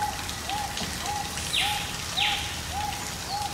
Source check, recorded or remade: remade